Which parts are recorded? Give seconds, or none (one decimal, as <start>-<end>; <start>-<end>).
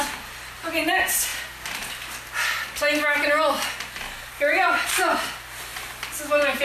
0.0-6.6